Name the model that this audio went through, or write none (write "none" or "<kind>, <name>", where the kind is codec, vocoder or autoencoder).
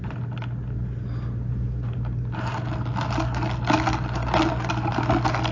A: none